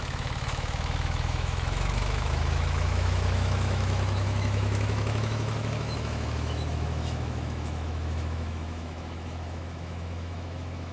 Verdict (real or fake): fake